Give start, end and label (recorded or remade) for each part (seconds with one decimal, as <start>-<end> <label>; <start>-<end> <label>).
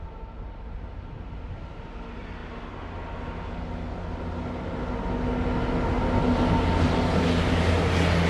0.0-8.3 recorded